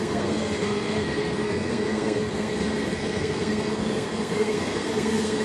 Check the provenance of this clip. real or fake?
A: fake